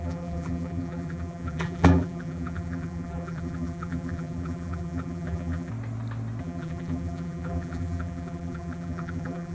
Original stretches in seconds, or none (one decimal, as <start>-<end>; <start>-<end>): 5.7-6.4